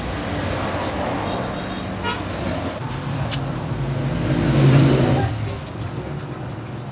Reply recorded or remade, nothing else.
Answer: recorded